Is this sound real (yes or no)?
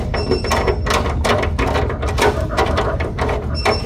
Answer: yes